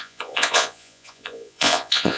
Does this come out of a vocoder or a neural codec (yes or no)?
yes